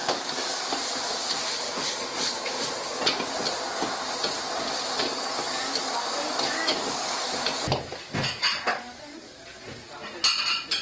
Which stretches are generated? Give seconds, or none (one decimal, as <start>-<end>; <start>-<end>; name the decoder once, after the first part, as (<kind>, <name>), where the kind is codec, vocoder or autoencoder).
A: 0.0-0.7 (codec, DAC); 5.1-7.3; 8.7-9.6